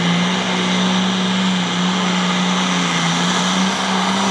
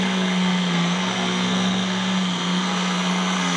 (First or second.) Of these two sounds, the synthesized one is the second